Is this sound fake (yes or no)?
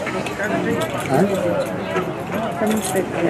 no